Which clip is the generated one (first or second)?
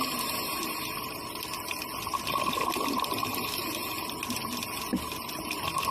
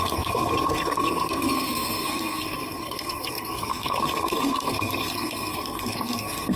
second